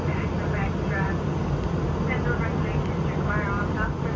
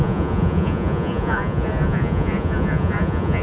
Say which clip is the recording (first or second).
first